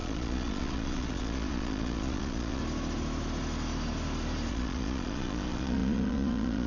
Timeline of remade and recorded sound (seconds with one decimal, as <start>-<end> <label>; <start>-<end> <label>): 0.0-2.6 remade; 2.6-4.5 recorded; 4.5-6.7 remade

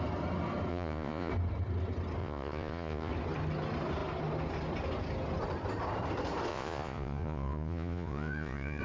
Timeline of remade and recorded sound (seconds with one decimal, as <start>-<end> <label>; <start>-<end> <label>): 0.0-0.7 recorded; 0.7-1.3 remade; 1.3-2.2 recorded; 2.2-3.1 remade; 3.1-6.5 recorded; 6.5-8.8 remade

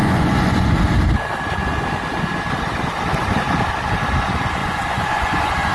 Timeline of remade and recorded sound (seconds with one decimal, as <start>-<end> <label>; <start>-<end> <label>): 0.0-0.7 remade; 0.7-4.6 recorded; 4.6-5.7 remade

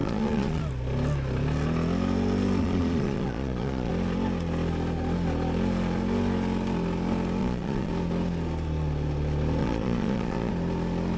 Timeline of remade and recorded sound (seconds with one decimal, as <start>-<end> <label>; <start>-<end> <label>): 0.0-0.6 remade; 0.6-2.6 recorded; 2.6-3.9 remade; 3.9-7.4 recorded; 7.4-7.9 remade; 7.9-9.6 recorded; 9.6-10.5 remade; 10.5-11.2 recorded

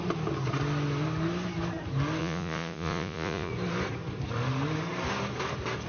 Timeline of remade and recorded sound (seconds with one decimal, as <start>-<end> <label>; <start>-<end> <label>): 0.0-2.2 recorded; 2.2-3.5 remade; 3.5-5.9 recorded